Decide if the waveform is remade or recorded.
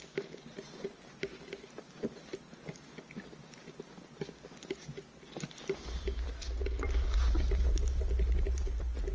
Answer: recorded